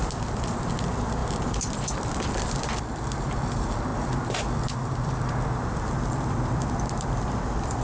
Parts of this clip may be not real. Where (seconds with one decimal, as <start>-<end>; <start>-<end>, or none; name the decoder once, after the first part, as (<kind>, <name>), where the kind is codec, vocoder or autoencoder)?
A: 0.0-7.8 (vocoder, BigVGAN v2)